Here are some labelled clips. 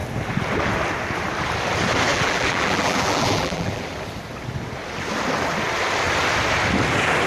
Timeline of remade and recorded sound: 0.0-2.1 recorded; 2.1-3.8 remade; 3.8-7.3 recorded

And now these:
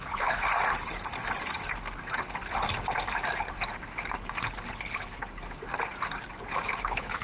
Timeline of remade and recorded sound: 0.0-0.5 remade; 0.5-4.4 recorded; 4.4-5.2 remade; 5.2-6.8 recorded; 6.8-7.2 remade

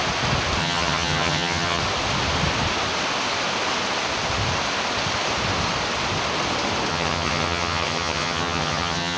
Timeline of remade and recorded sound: 0.0-0.6 recorded; 0.6-1.8 remade; 1.8-6.9 recorded; 6.9-9.2 remade

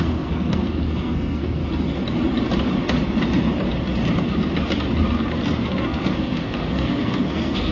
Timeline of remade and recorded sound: 0.0-1.6 remade; 1.6-5.7 recorded; 5.7-7.7 remade

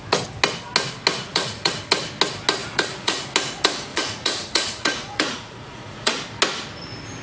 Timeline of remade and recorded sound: 0.0-1.1 recorded; 1.1-1.7 remade; 1.7-2.6 recorded; 2.6-3.2 remade; 3.2-3.9 recorded; 3.9-6.2 remade; 6.2-7.2 recorded

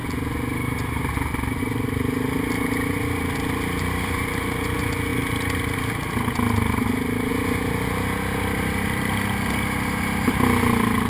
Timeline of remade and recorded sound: 0.0-11.1 recorded